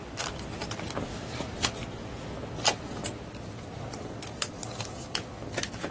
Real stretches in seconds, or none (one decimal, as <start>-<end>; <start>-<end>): 1.8-2.5; 3.0-4.0